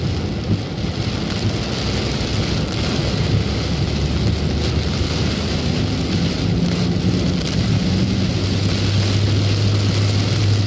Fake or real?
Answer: real